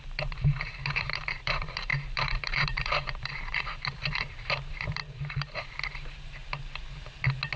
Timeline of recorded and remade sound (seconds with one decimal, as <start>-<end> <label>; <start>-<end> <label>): 0.0-6.4 remade; 6.4-7.6 recorded

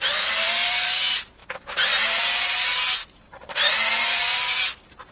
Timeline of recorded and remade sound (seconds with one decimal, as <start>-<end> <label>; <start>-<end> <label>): 0.0-1.4 remade; 1.4-2.2 recorded; 2.2-5.1 remade

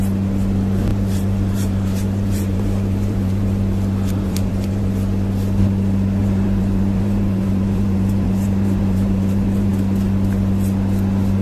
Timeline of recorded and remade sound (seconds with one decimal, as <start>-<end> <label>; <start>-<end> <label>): 0.0-0.9 recorded; 0.9-4.9 remade; 4.9-6.2 recorded; 6.2-9.7 remade; 9.7-11.4 recorded

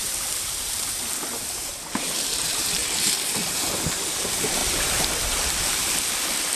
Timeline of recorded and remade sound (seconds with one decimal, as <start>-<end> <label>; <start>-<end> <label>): 0.0-2.8 remade; 2.8-3.5 recorded; 3.5-4.6 remade; 4.6-6.6 recorded

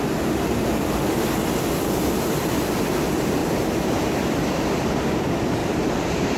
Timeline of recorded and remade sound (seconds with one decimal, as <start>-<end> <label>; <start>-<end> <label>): 0.0-1.4 remade; 1.4-3.0 recorded; 3.0-6.4 remade